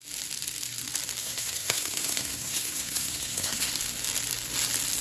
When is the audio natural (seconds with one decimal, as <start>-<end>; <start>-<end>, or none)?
0.0-1.2; 3.7-5.0